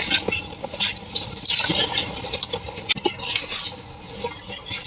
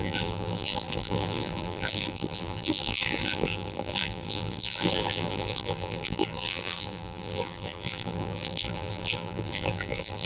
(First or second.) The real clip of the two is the first